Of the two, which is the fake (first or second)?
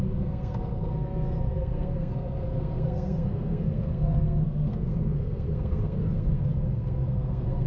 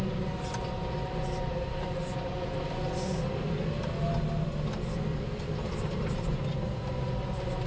first